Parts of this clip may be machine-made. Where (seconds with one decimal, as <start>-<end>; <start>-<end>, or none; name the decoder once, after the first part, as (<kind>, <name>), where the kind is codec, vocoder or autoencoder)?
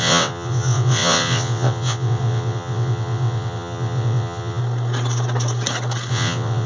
0.0-4.6 (vocoder, WaveNeXt); 6.1-6.7